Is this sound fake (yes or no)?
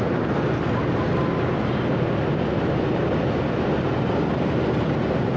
no